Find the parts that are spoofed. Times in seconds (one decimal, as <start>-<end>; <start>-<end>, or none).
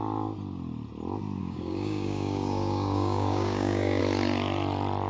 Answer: 1.4-4.0